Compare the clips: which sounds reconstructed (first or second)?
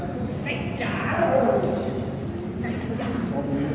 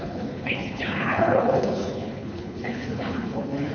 second